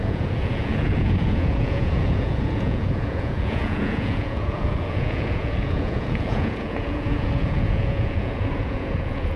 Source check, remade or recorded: remade